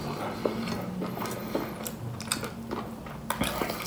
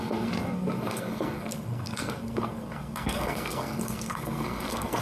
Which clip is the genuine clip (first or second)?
first